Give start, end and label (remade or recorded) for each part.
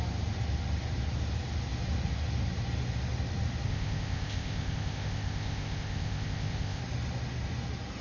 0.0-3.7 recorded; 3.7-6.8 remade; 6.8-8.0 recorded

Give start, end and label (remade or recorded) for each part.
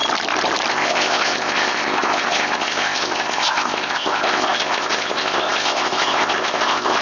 0.0-0.7 recorded; 0.7-7.0 remade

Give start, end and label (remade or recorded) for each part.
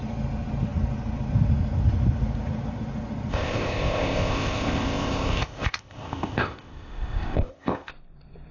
0.0-3.3 recorded; 3.3-7.9 remade; 7.9-8.5 recorded